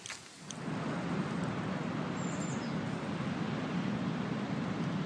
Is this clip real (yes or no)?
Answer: yes